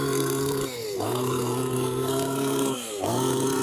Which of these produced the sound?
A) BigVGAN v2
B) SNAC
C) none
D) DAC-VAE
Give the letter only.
B